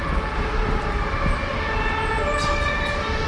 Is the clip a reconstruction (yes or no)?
no